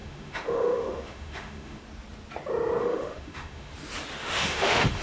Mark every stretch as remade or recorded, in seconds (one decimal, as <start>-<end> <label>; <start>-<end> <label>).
0.0-1.8 remade; 1.8-2.8 recorded; 2.8-3.7 remade; 3.7-4.2 recorded; 4.2-5.0 remade